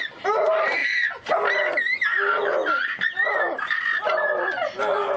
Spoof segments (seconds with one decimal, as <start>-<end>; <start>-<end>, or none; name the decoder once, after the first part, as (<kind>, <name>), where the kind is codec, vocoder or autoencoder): none